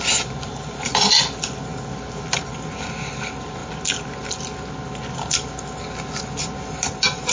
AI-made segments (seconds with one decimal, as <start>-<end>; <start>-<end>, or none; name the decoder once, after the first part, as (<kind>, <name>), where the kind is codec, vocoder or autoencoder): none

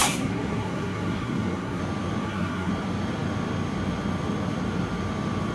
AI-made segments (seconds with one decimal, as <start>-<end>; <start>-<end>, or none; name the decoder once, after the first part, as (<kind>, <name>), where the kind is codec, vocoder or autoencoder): 0.0-1.8 (codec, SNAC); 2.2-2.7

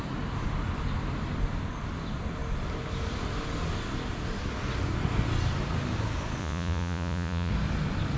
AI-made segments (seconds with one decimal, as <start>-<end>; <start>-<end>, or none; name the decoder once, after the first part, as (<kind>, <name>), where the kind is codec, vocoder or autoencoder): 6.4-7.5 (vocoder, Vocos)

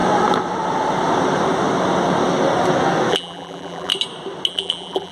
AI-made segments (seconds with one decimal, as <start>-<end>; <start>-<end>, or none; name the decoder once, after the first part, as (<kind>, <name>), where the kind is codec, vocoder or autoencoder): 3.1-3.9 (vocoder, BigVGAN v2); 4.5-5.1

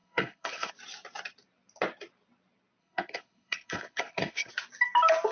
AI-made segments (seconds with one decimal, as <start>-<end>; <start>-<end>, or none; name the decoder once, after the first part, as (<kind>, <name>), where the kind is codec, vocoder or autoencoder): 0.0-0.7 (codec, HILCodec); 2.8-4.5

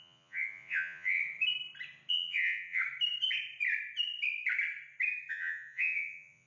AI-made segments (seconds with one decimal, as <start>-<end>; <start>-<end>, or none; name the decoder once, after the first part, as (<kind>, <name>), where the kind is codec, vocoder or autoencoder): 0.0-1.2 (vocoder, Vocos); 2.1-2.8; 5.3-6.5

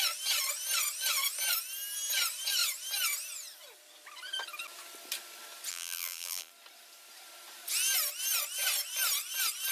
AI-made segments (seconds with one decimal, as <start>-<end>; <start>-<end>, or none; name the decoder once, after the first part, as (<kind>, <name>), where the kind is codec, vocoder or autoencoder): 5.7-6.5 (vocoder, BigVGAN v2)

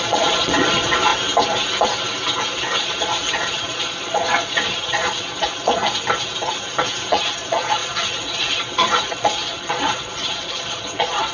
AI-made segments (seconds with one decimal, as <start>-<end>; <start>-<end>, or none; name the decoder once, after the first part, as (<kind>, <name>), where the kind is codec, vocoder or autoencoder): 0.0-1.1 (vocoder, Vocos); 2.8-5.8; 7.1-11.3